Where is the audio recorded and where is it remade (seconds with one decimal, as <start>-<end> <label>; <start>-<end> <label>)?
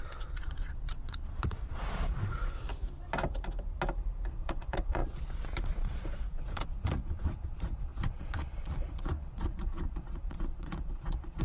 0.0-2.7 remade; 2.7-4.3 recorded; 4.3-11.4 remade